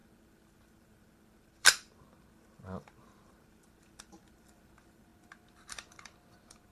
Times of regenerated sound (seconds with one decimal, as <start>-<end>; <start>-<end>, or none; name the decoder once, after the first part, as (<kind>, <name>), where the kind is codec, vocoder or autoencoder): 0.0-6.7 (vocoder, BigVGAN v2)